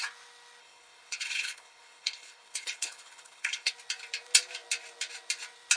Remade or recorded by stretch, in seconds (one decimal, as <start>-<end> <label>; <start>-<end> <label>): 0.0-0.6 recorded; 0.6-3.7 remade; 3.7-5.8 recorded

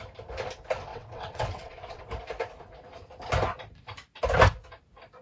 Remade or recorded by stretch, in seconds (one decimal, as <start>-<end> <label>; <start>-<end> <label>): 0.0-0.9 recorded; 0.9-2.0 remade; 2.0-5.2 recorded

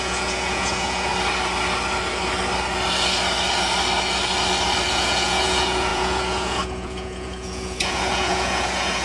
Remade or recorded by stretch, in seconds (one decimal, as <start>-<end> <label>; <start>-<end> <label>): 0.0-1.1 remade; 1.1-4.9 recorded; 4.9-9.0 remade

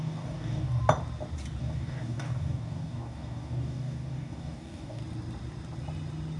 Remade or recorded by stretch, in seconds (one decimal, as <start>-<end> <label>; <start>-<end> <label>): 0.0-0.8 remade; 0.8-1.6 recorded; 1.6-5.0 remade; 5.0-6.4 recorded